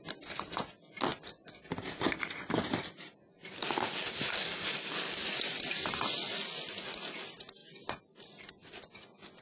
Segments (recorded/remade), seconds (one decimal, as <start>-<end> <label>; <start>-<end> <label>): 0.0-1.1 recorded; 1.1-5.3 remade; 5.3-7.6 recorded; 7.6-8.4 remade; 8.4-9.4 recorded